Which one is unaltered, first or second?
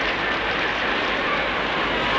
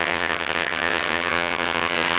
first